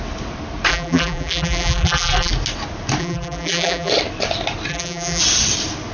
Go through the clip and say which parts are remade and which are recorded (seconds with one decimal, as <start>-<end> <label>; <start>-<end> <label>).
0.0-0.7 recorded; 0.7-2.3 remade; 2.3-3.0 recorded; 3.0-3.9 remade; 3.9-4.7 recorded; 4.7-5.2 remade; 5.2-5.9 recorded